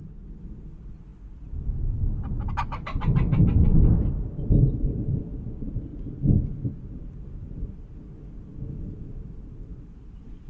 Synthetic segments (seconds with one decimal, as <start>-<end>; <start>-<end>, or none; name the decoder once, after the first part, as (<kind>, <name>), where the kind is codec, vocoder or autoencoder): none